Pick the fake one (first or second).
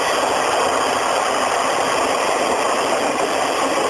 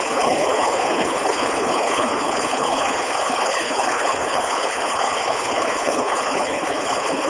second